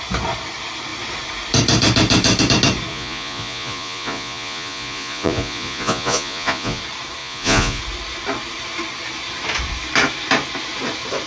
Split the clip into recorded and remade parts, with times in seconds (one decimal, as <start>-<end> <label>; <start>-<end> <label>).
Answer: 0.0-2.9 recorded; 2.9-6.8 remade; 6.8-7.2 recorded; 7.2-7.8 remade; 7.8-11.3 recorded